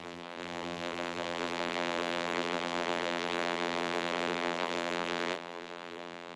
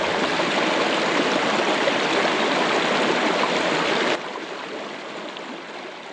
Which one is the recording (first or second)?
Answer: second